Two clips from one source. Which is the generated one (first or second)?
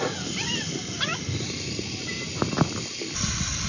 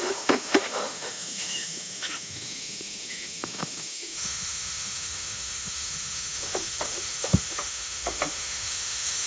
second